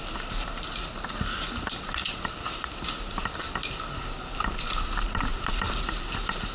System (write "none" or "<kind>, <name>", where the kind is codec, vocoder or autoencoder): none